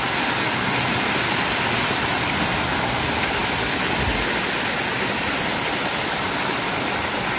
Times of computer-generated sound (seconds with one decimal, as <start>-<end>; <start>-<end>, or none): none